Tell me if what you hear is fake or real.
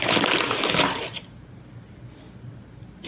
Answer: real